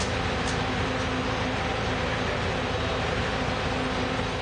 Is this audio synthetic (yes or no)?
no